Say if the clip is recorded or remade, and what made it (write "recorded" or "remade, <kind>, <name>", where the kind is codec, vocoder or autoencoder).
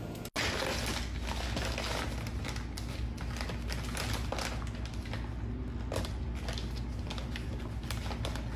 recorded